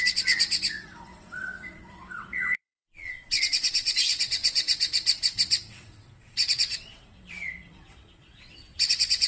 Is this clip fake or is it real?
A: fake